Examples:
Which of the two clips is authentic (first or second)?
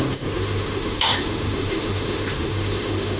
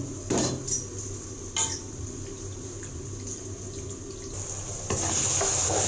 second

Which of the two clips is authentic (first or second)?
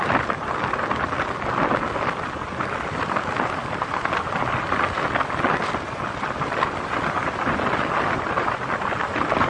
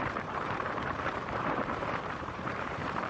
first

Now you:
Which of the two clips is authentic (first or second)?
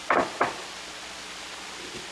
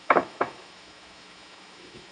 first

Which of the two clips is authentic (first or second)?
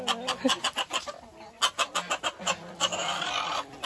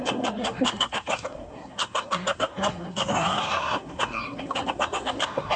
first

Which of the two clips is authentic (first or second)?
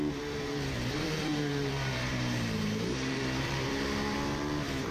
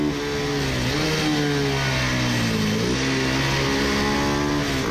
second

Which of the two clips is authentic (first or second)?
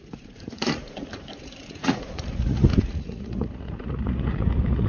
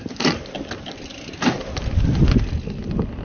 second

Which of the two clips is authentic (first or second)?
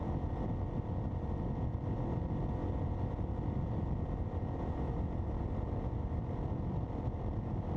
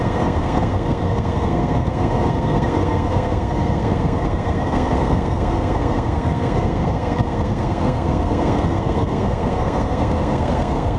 first